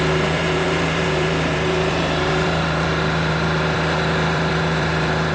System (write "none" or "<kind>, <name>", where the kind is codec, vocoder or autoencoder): vocoder, BigVGAN v2